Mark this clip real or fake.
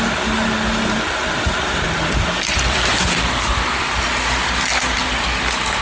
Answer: real